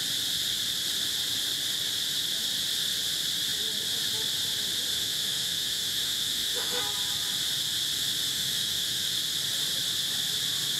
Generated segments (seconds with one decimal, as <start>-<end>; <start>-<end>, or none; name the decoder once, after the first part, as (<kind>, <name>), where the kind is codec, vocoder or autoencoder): 4.9-6.8 (autoencoder, DAC-VAE); 8.3-9.2